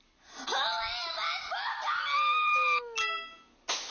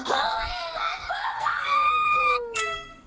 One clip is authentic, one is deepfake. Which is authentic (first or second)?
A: first